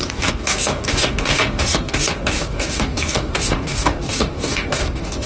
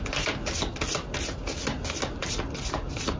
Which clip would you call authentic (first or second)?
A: second